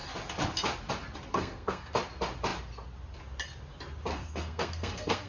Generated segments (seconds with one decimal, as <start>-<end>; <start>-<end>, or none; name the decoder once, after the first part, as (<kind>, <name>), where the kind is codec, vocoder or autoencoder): 1.3-1.9 (codec, SNAC); 4.1-5.3